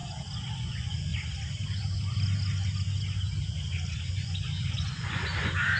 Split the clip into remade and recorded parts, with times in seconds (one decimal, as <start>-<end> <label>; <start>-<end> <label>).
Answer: 0.0-0.6 recorded; 0.6-1.1 remade; 1.1-4.1 recorded; 4.1-5.8 remade